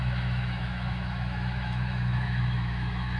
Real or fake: fake